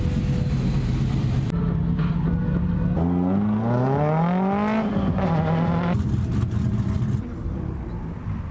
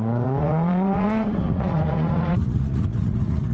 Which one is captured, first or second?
first